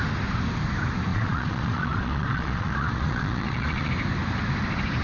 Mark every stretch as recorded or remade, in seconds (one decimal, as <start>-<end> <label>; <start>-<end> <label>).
0.0-1.1 recorded; 1.1-3.9 remade; 3.9-5.0 recorded